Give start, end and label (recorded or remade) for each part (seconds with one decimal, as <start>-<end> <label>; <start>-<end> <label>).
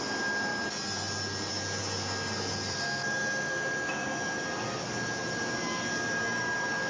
0.0-6.9 recorded